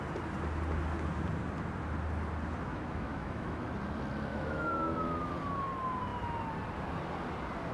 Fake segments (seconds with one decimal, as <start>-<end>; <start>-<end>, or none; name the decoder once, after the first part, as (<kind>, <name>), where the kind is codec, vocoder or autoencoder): 2.7-3.6 (autoencoder, DAC-VAE); 4.3-5.3